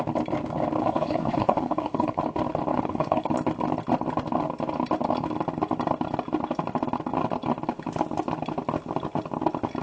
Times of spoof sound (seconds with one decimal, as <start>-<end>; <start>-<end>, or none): 0.8-2.2; 2.7-3.3